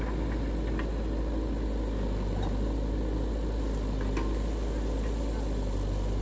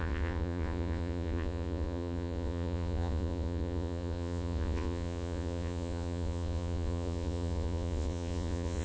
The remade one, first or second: second